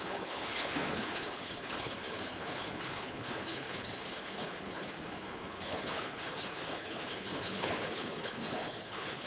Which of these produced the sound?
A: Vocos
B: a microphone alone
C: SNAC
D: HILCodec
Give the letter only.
D